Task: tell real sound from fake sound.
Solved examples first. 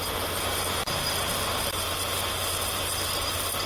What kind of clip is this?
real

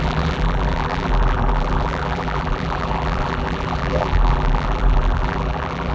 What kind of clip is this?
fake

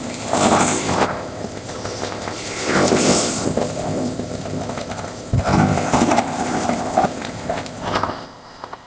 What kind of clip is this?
fake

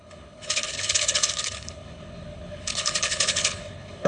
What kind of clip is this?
fake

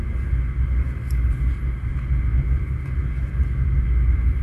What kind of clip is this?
real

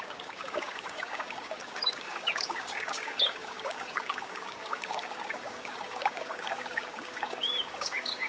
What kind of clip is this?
fake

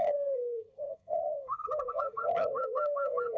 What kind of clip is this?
fake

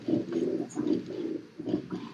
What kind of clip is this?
real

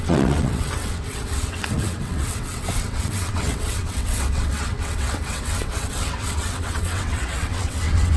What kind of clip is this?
fake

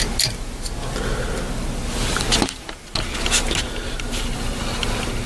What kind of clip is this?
real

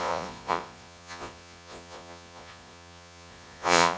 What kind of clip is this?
fake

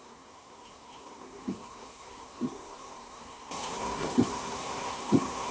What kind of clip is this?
fake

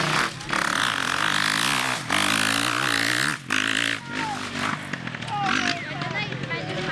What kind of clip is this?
real